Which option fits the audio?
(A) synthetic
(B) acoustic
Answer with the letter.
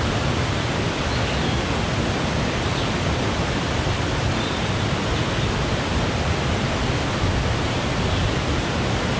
B